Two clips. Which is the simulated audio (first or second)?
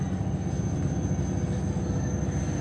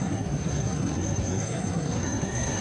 second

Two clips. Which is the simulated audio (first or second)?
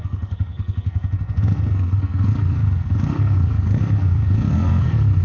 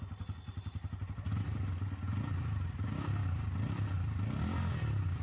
first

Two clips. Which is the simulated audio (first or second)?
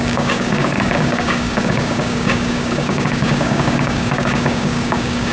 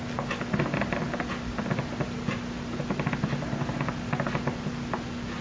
first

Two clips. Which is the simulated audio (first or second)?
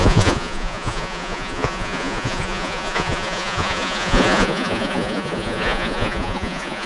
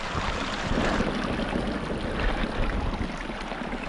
first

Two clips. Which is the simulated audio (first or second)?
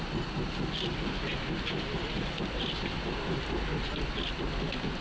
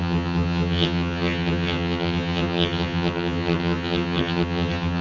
second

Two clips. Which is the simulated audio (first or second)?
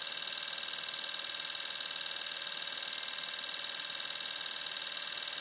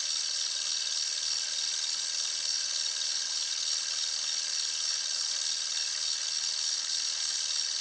second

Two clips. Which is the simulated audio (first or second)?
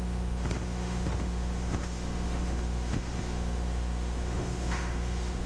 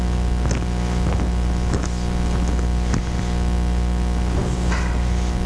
first